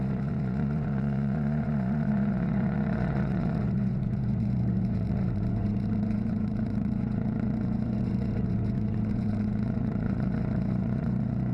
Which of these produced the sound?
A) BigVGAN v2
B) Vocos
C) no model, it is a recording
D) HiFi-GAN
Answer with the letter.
B